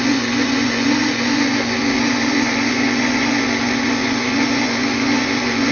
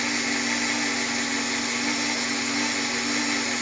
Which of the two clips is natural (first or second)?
second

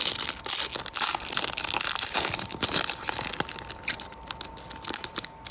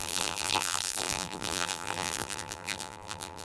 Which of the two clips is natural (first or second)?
first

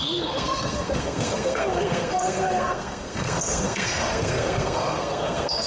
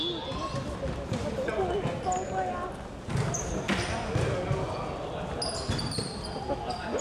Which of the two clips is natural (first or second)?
second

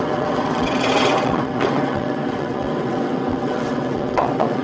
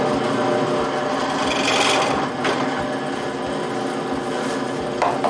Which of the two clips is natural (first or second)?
second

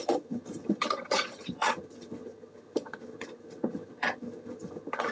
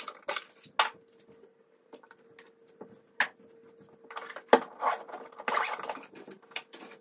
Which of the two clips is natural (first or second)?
second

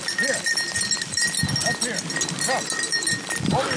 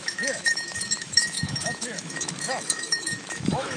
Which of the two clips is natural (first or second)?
first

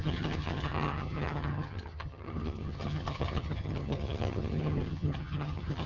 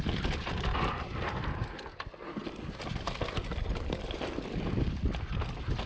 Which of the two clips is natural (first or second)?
second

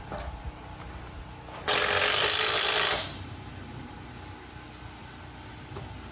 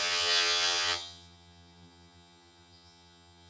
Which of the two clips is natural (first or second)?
first